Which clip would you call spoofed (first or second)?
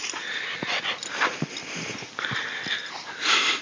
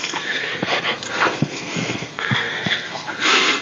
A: second